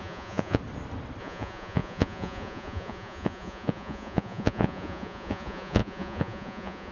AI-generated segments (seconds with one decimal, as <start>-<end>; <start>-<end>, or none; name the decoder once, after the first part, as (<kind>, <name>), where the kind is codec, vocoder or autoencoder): 0.0-0.6 (vocoder, Vocos); 1.2-6.9